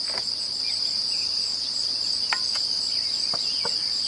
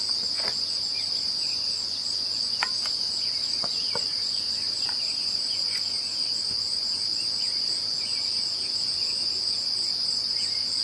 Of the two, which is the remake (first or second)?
second